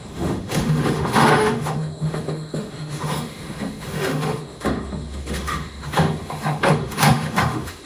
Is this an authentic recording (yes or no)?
no